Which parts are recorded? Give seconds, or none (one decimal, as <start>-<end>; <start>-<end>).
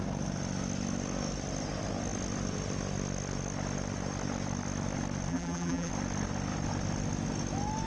0.0-5.3; 5.9-7.9